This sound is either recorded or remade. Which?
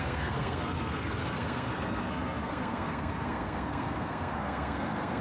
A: remade